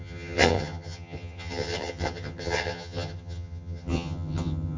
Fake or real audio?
fake